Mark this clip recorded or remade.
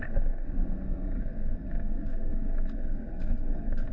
remade